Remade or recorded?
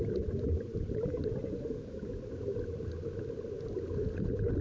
recorded